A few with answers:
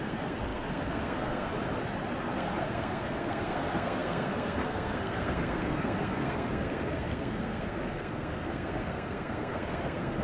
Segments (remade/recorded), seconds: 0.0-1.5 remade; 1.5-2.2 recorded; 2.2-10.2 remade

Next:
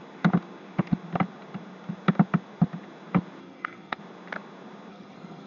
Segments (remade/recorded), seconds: 0.0-3.4 recorded; 3.4-4.0 remade; 4.0-4.9 recorded; 4.9-5.5 remade